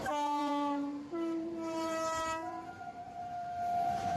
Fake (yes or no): yes